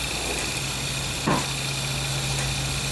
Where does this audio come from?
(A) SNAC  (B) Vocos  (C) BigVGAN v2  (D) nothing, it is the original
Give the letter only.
D